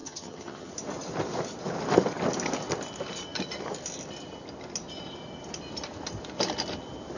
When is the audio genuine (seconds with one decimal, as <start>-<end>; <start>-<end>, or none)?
0.7-7.2